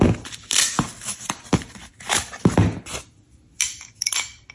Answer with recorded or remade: recorded